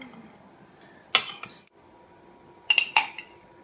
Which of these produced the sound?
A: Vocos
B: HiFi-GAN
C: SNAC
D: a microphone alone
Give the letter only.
D